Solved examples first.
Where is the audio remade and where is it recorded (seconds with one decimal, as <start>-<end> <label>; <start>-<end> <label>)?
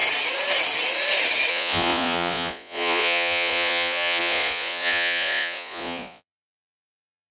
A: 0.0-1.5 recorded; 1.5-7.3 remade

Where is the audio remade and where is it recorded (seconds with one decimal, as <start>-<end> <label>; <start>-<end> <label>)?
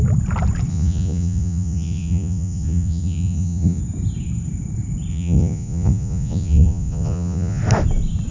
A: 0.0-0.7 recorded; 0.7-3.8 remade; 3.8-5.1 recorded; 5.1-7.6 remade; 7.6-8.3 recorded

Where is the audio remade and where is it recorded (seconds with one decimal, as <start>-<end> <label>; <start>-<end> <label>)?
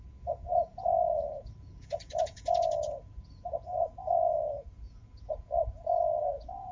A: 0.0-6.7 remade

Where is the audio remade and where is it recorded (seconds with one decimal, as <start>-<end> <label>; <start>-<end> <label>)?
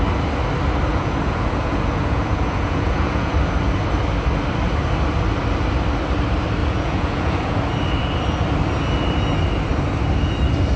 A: 0.0-0.9 recorded; 0.9-3.3 remade; 3.3-6.6 recorded; 6.6-7.6 remade; 7.6-10.8 recorded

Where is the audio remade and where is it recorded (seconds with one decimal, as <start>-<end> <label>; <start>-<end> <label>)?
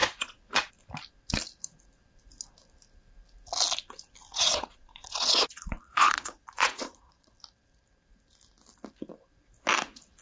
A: 0.0-0.7 remade; 0.7-4.3 recorded; 4.3-7.3 remade; 7.3-10.2 recorded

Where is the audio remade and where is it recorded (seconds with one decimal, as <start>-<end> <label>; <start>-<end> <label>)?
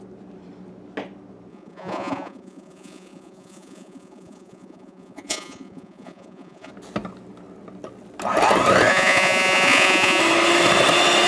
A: 0.0-1.5 recorded; 1.5-6.7 remade; 6.7-8.9 recorded; 8.9-10.2 remade; 10.2-11.3 recorded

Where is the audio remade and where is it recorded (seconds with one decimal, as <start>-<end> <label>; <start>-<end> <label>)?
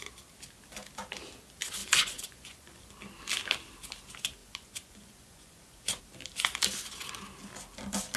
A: 0.0-1.8 recorded; 1.8-2.9 remade; 2.9-4.4 recorded; 4.4-6.0 remade; 6.0-8.2 recorded